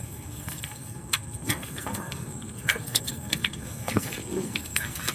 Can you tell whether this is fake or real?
fake